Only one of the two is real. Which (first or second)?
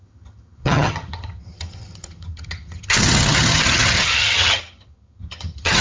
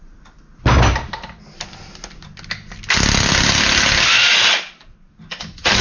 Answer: second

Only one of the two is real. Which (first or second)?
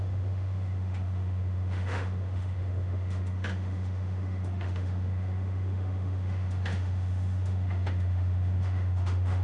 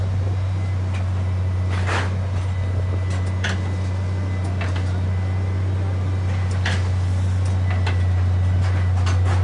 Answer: second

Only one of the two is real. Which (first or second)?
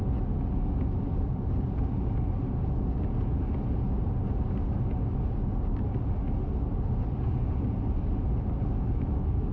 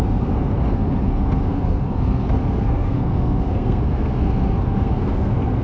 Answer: first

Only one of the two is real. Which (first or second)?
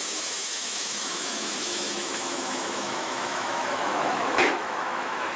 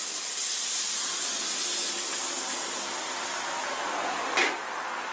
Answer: second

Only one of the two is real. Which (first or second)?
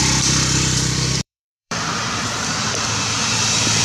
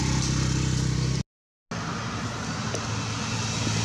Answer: second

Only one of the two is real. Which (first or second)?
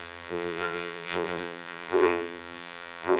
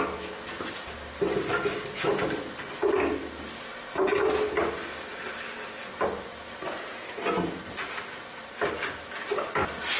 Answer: second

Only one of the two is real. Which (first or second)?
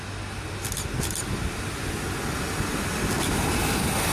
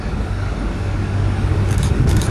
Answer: first